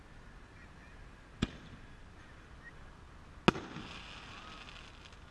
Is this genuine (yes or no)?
yes